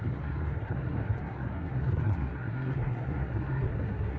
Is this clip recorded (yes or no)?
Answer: no